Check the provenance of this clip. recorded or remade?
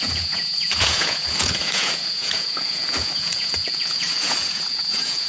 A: remade